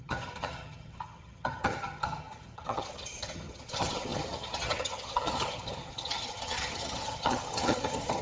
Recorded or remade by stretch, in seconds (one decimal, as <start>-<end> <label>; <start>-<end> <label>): 0.0-8.2 remade